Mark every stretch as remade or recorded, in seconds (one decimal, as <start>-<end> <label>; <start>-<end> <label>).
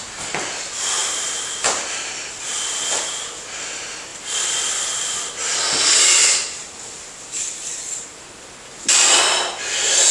0.0-4.1 recorded; 4.1-9.2 remade; 9.2-10.1 recorded